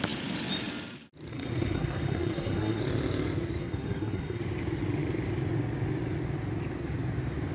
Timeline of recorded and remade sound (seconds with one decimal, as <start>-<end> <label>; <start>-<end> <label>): 0.0-1.3 recorded; 1.3-2.8 remade; 2.8-3.6 recorded; 3.6-4.4 remade; 4.4-7.5 recorded